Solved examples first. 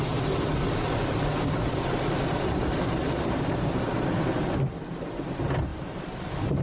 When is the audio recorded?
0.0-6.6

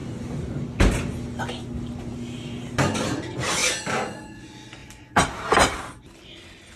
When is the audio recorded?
0.0-4.8; 5.8-6.8

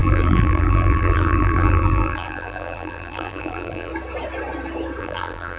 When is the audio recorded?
3.9-5.0